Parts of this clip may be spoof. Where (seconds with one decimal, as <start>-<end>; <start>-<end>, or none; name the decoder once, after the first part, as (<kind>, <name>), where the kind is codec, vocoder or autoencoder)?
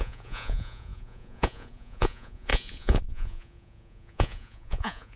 0.0-5.2 (vocoder, Vocos)